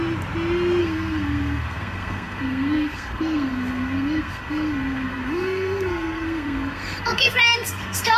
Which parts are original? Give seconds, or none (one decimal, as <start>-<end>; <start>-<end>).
0.0-0.8